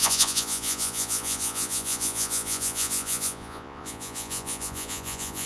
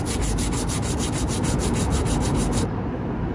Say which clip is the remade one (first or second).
first